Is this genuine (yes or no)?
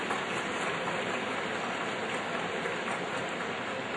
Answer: yes